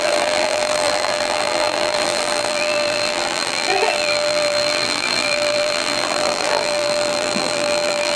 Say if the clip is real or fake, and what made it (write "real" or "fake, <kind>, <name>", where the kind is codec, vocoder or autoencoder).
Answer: fake, vocoder, BigVGAN v2